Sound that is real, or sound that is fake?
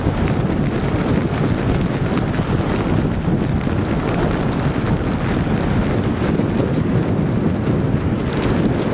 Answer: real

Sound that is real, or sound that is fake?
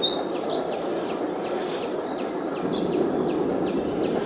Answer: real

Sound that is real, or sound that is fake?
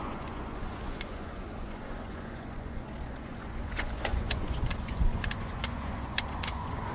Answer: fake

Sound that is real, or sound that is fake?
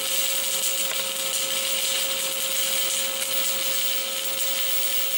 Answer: real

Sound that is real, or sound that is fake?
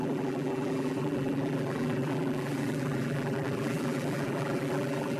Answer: fake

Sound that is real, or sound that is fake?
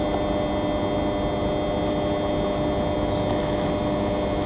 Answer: real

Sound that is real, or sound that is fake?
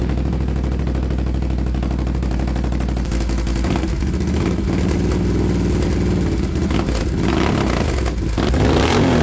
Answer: real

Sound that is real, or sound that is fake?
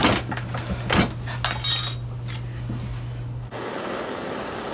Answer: real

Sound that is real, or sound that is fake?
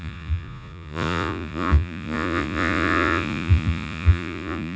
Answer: fake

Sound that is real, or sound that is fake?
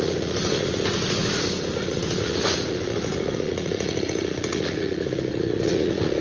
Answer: fake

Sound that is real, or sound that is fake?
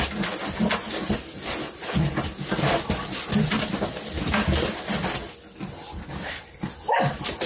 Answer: real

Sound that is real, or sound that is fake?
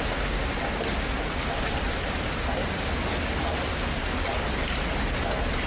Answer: real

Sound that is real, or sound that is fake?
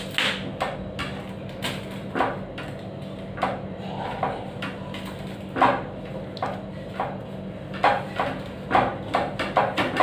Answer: real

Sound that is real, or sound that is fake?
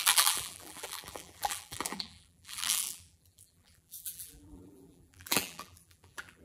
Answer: fake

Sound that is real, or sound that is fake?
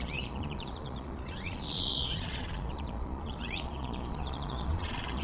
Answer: fake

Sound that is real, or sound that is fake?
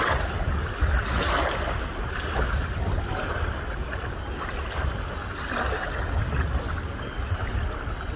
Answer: real